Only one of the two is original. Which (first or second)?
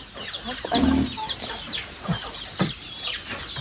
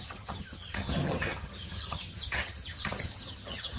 first